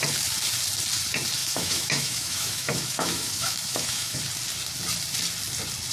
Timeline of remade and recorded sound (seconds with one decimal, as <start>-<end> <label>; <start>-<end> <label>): 0.0-1.4 recorded; 1.4-4.2 remade; 4.2-5.9 recorded